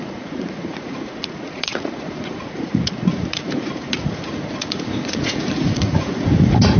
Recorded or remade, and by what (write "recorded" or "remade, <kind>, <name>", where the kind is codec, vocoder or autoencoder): remade, vocoder, Vocos